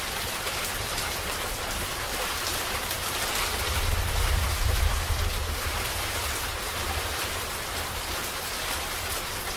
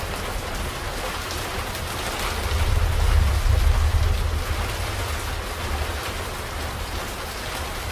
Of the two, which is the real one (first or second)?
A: second